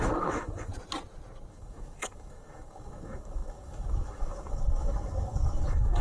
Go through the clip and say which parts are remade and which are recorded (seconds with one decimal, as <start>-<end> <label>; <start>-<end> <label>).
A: 0.0-0.7 remade; 0.7-1.5 recorded; 1.5-6.0 remade